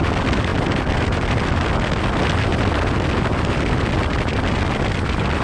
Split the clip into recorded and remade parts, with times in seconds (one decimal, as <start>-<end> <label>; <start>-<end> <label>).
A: 0.0-5.4 recorded